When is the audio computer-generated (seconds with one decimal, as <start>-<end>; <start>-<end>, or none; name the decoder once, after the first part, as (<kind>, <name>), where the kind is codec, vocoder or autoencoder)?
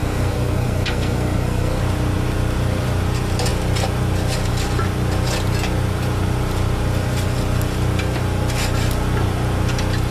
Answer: 0.0-1.8 (codec, SNAC)